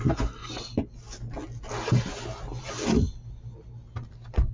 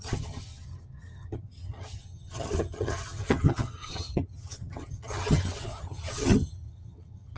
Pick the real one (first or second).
first